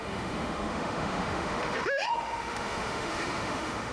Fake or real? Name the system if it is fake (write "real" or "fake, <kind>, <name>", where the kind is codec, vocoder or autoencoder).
fake, autoencoder, DAC-VAE